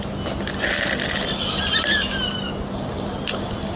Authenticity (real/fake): real